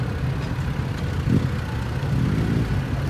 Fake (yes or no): no